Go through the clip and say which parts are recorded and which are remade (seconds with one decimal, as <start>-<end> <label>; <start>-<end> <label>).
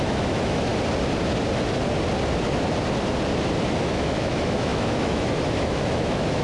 0.0-0.7 remade; 0.7-3.8 recorded; 3.8-6.4 remade